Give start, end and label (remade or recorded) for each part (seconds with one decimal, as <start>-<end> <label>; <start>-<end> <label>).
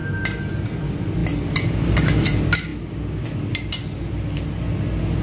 0.0-5.2 recorded